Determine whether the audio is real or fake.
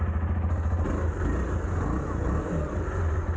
real